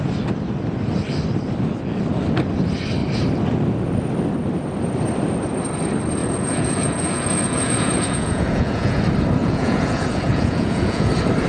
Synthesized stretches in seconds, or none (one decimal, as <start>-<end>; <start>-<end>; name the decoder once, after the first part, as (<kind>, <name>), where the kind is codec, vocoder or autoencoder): 6.2-9.0 (vocoder, Vocos); 9.4-11.1